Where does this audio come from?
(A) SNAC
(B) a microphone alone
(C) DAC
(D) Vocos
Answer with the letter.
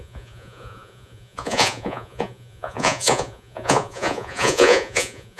D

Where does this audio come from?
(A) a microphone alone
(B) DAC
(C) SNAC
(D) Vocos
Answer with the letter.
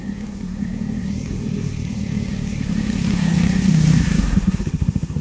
C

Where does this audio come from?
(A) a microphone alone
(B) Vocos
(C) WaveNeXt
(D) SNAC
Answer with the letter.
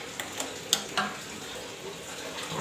A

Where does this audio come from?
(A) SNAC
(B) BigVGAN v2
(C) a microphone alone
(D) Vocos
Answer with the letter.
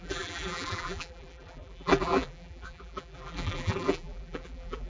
B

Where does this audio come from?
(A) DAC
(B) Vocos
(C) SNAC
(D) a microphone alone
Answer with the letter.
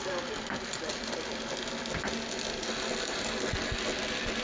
D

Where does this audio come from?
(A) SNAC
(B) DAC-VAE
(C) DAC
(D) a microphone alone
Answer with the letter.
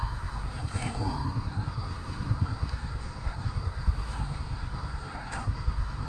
A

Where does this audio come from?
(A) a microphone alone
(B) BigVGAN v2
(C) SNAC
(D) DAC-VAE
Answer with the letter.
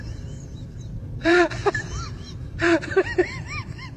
B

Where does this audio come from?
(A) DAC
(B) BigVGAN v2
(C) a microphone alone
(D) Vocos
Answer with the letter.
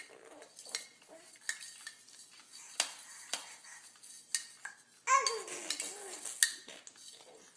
C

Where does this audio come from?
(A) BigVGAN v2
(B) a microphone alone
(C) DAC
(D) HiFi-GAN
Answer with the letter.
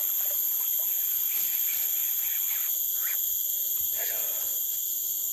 B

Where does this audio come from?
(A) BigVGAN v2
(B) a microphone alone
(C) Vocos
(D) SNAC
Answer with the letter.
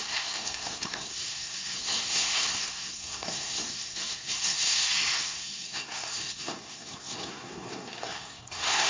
D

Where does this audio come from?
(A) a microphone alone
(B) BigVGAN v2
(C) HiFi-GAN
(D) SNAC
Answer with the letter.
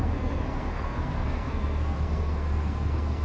D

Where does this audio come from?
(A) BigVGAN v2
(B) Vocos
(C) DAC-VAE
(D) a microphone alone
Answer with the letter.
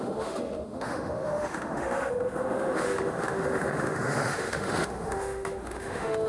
C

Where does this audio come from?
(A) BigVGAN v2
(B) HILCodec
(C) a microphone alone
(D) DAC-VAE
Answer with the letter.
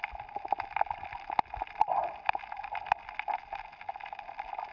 C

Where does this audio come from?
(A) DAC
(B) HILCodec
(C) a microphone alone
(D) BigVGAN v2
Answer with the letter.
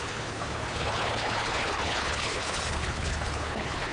B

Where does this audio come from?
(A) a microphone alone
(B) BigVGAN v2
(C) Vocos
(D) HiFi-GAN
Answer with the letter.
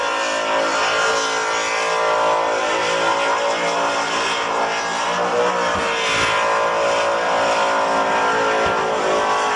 A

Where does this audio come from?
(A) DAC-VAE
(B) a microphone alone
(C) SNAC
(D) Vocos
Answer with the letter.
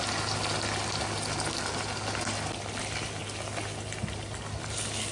B